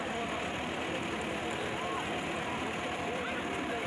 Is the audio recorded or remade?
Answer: recorded